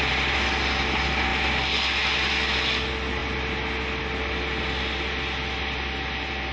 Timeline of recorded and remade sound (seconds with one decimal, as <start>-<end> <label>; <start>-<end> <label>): 0.0-6.5 recorded